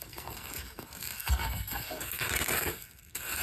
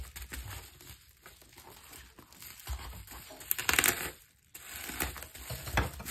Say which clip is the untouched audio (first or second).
second